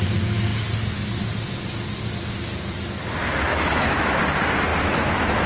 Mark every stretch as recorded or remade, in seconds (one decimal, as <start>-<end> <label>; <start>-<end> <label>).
0.0-3.5 recorded; 3.5-4.1 remade; 4.1-4.7 recorded; 4.7-5.5 remade